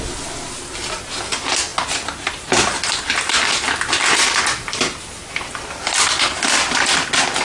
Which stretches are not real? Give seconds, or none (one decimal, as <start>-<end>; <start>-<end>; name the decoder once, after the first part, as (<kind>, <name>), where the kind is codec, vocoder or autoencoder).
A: none